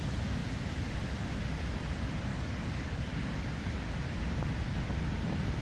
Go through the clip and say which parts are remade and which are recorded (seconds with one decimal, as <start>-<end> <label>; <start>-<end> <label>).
0.0-2.3 recorded; 2.3-3.7 remade; 3.7-5.6 recorded